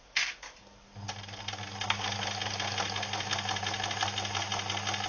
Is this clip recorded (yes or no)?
yes